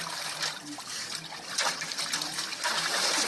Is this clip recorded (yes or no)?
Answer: yes